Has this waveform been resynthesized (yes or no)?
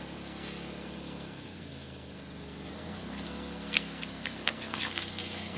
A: yes